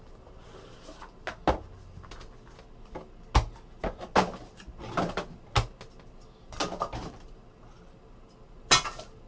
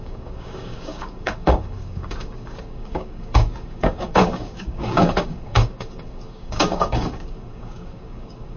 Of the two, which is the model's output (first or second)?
second